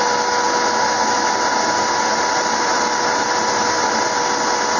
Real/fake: real